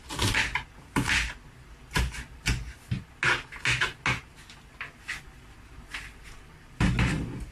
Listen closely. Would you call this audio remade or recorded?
recorded